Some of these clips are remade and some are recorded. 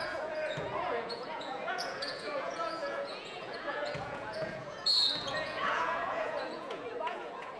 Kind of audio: remade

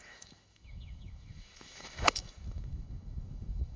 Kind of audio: remade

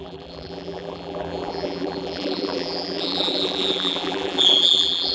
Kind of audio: remade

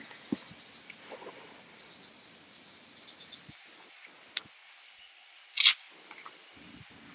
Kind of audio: recorded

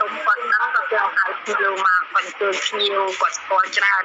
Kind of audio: recorded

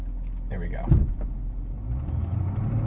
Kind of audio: recorded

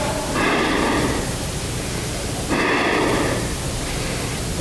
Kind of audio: recorded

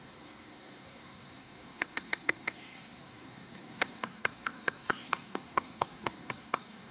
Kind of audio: remade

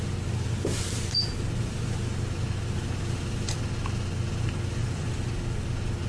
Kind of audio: recorded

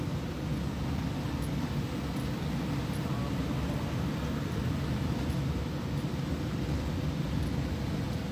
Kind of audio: recorded